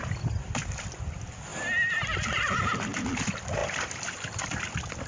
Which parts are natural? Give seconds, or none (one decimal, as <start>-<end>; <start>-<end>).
0.0-5.1